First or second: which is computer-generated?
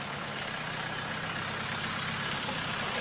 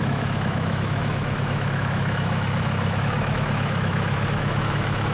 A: second